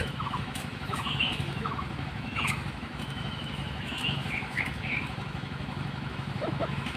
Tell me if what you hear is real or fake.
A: fake